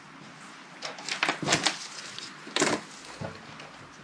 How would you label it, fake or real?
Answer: real